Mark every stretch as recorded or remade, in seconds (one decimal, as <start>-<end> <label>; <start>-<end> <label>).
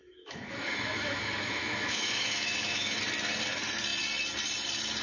0.0-3.0 remade; 3.0-5.0 recorded